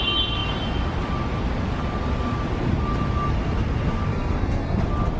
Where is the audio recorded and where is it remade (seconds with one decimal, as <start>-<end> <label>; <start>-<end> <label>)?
0.0-4.1 recorded; 4.1-4.8 remade; 4.8-5.2 recorded